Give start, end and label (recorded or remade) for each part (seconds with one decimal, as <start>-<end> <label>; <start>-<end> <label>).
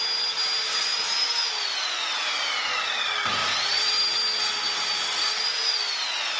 0.0-6.4 recorded